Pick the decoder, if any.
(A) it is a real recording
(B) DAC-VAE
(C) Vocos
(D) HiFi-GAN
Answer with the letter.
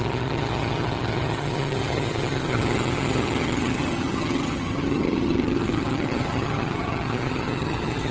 D